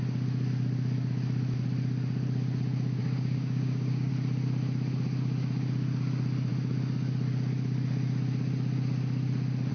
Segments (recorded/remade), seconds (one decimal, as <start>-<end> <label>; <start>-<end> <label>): 0.0-3.0 recorded; 3.0-4.1 remade; 4.1-9.7 recorded